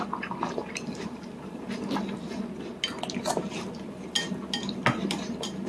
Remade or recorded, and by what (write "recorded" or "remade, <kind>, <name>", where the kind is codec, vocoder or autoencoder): recorded